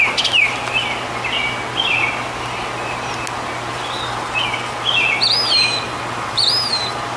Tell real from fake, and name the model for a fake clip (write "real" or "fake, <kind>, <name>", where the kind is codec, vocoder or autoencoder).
real